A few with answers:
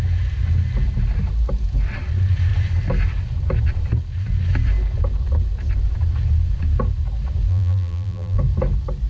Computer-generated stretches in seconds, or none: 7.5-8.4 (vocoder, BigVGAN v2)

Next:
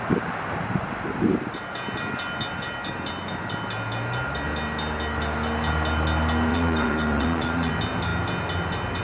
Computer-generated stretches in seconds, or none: 6.5-7.7 (vocoder, Vocos)

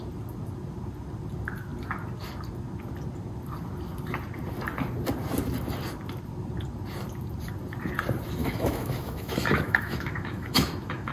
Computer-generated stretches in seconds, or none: 8.4-11.1 (autoencoder, DAC-VAE)

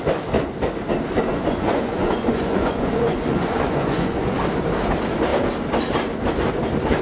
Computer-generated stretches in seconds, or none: 1.3-4.4 (vocoder, Vocos)

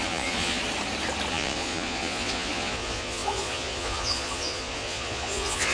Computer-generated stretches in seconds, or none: 0.0-0.6 (vocoder, Vocos); 1.3-5.7